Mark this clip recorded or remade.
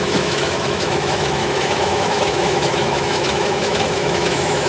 remade